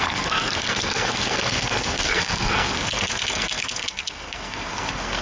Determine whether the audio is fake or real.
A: fake